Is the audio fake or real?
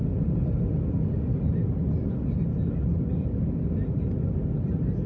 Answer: real